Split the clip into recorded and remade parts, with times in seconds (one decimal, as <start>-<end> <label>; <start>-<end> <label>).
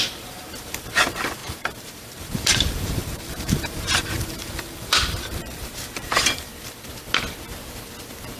0.0-6.5 remade; 6.5-8.4 recorded